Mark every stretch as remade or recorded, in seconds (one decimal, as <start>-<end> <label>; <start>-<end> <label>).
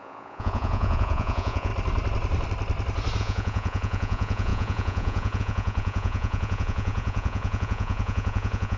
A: 0.0-1.7 remade; 1.7-3.2 recorded; 3.2-8.8 remade